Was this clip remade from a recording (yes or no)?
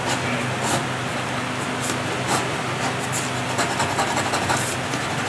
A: no